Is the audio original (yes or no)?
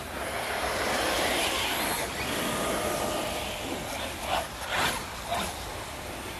yes